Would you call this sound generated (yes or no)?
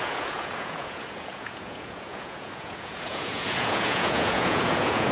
yes